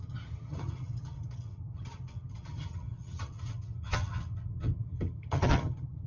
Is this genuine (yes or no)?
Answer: no